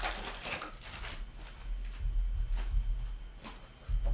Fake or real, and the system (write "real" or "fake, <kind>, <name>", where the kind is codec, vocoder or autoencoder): real